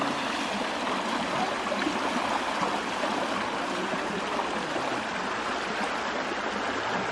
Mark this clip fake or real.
real